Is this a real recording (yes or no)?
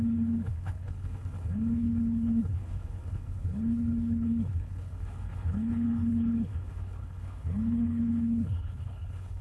no